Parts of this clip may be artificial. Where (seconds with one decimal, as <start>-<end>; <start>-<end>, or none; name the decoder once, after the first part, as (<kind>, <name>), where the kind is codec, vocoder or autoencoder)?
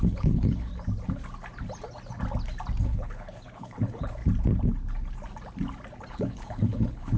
0.0-0.7 (codec, HILCodec); 2.8-4.2; 6.1-7.2